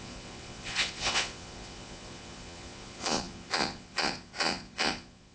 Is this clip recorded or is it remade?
remade